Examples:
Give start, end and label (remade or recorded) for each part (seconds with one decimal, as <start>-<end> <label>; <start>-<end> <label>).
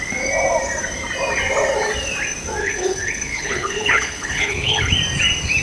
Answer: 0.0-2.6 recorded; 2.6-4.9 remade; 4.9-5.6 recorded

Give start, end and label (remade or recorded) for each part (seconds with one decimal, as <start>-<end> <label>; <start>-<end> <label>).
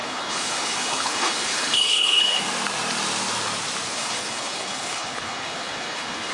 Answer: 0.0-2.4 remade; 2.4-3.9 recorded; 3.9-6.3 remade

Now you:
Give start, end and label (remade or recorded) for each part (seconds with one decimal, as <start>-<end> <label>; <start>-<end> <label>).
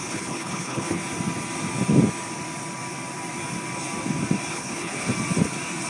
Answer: 0.0-1.0 remade; 1.0-4.5 recorded; 4.5-5.1 remade; 5.1-5.9 recorded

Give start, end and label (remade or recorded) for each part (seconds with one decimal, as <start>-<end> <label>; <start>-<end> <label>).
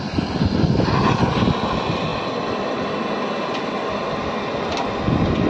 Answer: 0.0-5.5 recorded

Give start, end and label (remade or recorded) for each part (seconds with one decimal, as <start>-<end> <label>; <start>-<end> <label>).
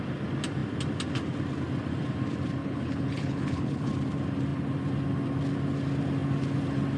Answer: 0.0-2.6 recorded; 2.6-3.9 remade; 3.9-7.0 recorded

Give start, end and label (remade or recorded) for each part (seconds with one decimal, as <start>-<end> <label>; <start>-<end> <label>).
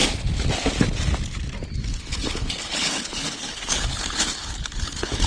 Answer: 0.0-1.9 recorded; 1.9-5.3 remade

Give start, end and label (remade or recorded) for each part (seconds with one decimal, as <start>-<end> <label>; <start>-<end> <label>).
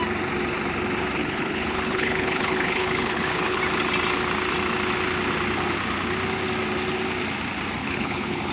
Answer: 0.0-1.2 recorded; 1.2-3.6 remade; 3.6-7.8 recorded; 7.8-8.5 remade